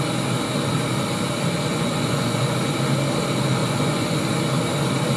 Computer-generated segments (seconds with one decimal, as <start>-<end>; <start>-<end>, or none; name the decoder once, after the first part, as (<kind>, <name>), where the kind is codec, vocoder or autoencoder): 1.7-2.7 (vocoder, Vocos); 3.6-4.2